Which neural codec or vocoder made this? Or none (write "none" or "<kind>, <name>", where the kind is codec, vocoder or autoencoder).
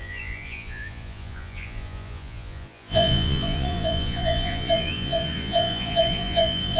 vocoder, Vocos